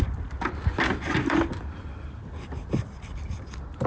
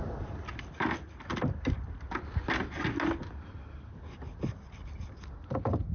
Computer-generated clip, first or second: first